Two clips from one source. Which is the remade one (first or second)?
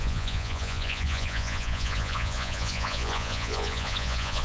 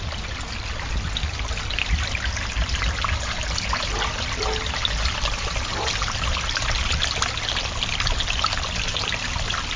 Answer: first